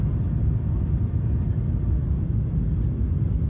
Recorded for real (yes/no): yes